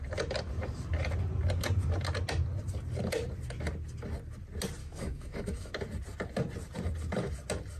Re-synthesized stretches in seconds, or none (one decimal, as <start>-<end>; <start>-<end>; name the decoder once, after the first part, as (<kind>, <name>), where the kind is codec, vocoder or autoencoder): 4.8-5.7 (autoencoder, DAC-VAE)